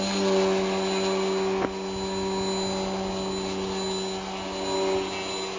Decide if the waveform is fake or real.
real